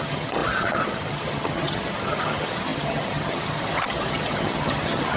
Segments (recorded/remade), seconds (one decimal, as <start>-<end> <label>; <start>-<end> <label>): 0.0-5.2 remade

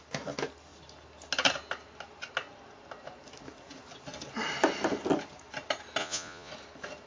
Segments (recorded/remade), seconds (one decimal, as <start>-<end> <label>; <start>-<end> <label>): 0.0-6.0 recorded; 6.0-6.5 remade; 6.5-7.1 recorded

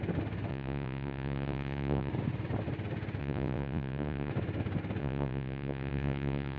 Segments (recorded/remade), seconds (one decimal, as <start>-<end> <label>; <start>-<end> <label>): 0.0-0.5 recorded; 0.5-2.1 remade; 2.1-3.2 recorded; 3.2-4.3 remade; 4.3-5.0 recorded; 5.0-6.6 remade

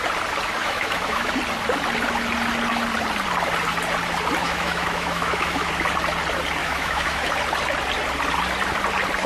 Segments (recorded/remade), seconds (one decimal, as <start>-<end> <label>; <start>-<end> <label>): 0.0-0.6 recorded; 0.6-1.3 remade; 1.3-4.4 recorded; 4.4-5.7 remade; 5.7-6.6 recorded; 6.6-7.3 remade; 7.3-9.3 recorded

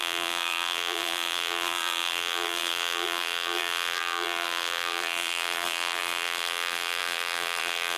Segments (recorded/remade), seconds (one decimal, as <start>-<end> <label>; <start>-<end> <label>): 0.0-8.0 remade

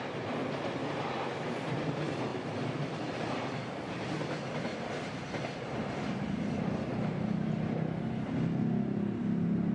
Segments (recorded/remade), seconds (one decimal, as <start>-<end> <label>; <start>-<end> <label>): 0.0-0.8 recorded; 0.8-1.7 remade; 1.7-4.7 recorded; 4.7-5.7 remade; 5.7-9.7 recorded